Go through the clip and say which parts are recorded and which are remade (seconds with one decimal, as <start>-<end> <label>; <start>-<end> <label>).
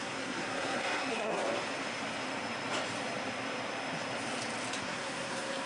0.0-1.4 remade; 1.4-4.8 recorded; 4.8-5.7 remade